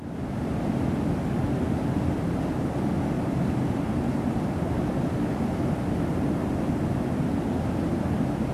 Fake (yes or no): no